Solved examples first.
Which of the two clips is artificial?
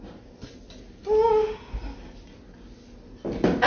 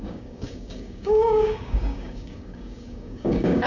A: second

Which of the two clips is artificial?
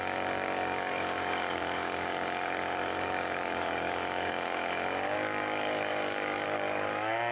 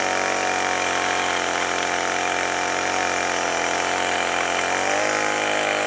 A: first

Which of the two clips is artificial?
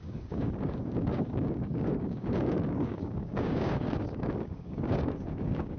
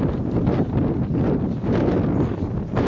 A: first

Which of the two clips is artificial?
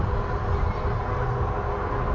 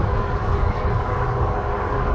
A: second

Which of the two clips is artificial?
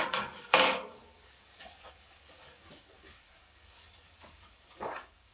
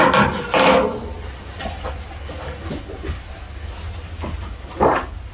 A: first